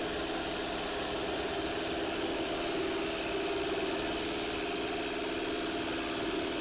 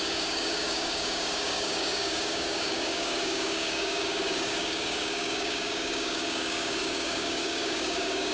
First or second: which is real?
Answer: first